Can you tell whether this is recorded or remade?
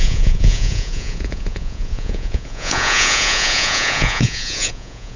remade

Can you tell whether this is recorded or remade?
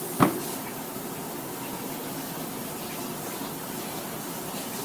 recorded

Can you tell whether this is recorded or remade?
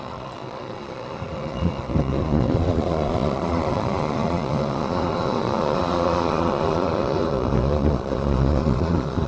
remade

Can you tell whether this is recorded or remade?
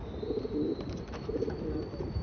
recorded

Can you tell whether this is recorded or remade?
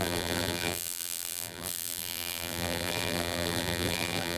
remade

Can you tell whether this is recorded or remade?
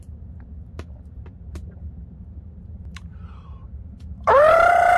remade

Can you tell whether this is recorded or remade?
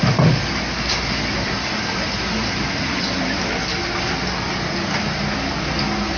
recorded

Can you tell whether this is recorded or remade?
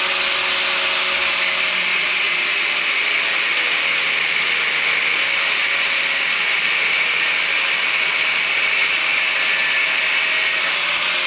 recorded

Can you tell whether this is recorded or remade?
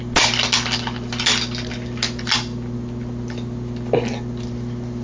recorded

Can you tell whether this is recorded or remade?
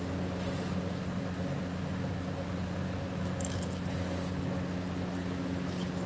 recorded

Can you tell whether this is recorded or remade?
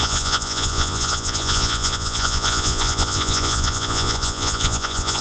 remade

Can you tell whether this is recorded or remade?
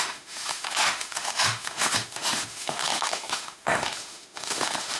remade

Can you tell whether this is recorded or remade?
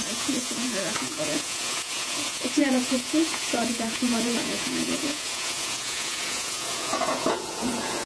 remade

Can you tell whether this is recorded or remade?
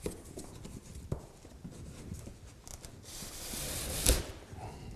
recorded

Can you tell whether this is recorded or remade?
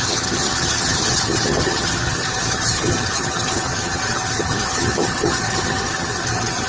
remade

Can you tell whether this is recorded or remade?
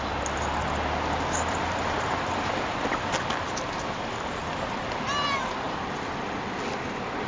recorded